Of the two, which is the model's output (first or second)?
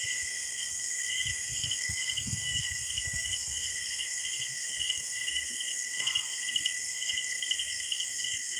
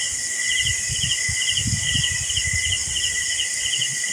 first